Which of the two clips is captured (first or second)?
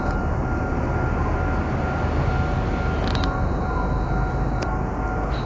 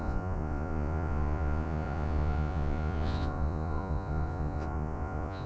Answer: first